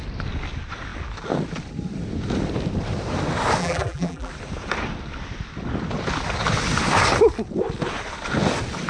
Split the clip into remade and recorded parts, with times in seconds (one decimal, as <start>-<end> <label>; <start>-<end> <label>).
0.0-3.6 recorded; 3.6-4.3 remade; 4.3-8.9 recorded